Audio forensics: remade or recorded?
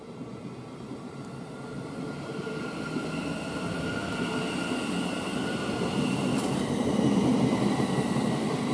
recorded